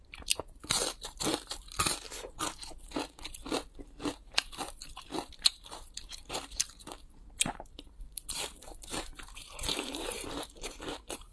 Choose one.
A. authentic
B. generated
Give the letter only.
B